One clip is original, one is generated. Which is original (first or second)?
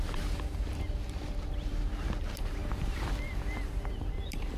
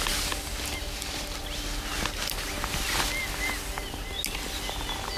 second